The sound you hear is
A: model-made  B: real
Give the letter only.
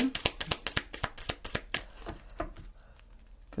B